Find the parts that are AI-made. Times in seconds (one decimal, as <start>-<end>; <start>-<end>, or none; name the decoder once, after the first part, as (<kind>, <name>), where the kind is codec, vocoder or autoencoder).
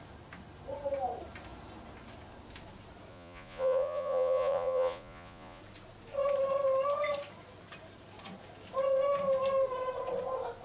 3.1-5.6 (vocoder, Vocos)